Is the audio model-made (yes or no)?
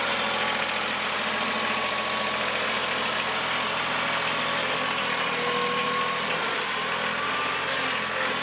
no